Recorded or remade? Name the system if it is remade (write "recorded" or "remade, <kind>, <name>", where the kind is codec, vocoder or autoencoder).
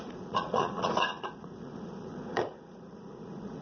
remade, vocoder, Vocos